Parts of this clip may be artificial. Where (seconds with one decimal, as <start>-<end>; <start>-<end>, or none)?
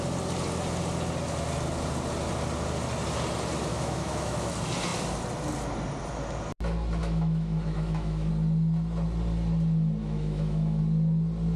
3.7-4.5; 7.0-8.3; 10.0-10.8